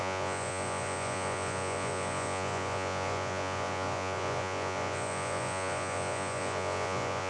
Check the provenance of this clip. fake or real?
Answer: fake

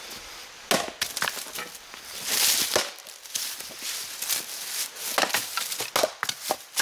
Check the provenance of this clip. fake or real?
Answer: real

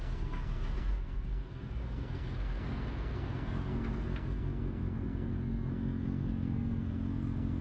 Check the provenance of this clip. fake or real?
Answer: fake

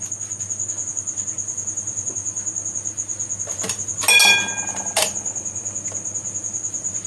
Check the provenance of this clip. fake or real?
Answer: real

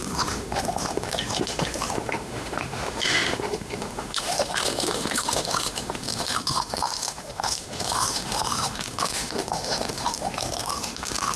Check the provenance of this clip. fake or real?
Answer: fake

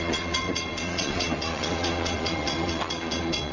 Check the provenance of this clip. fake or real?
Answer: fake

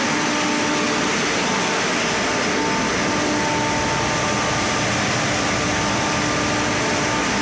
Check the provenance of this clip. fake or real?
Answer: real